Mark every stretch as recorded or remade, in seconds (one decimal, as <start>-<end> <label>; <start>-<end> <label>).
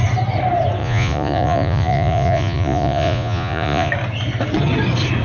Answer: 0.0-0.8 recorded; 0.8-3.9 remade; 3.9-5.2 recorded